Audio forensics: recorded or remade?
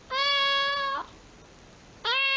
recorded